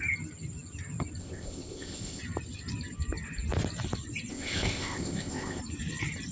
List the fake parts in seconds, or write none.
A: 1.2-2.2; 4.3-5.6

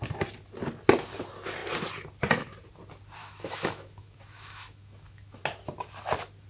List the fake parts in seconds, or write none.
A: 3.2-5.4